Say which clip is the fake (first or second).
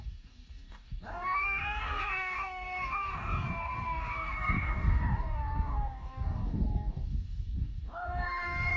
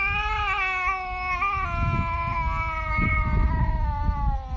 first